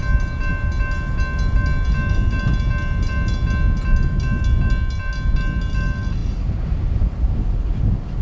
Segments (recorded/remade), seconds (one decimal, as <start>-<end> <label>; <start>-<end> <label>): 0.0-8.2 recorded